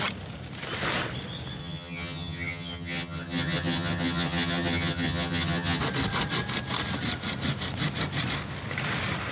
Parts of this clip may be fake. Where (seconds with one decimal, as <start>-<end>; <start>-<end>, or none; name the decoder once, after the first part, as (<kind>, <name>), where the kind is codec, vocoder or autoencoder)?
1.6-5.8 (vocoder, HiFi-GAN)